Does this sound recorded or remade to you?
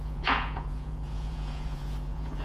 remade